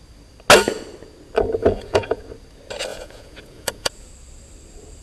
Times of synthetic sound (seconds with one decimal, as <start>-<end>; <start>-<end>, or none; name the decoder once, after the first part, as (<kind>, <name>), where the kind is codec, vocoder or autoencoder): 1.6-2.2 (vocoder, Vocos); 2.9-4.1